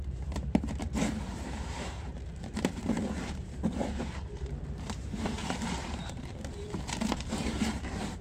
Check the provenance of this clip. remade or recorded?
remade